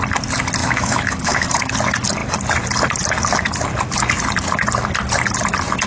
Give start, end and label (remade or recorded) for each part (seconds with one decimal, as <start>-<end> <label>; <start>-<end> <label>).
0.0-0.6 recorded; 0.6-1.7 remade; 1.7-5.9 recorded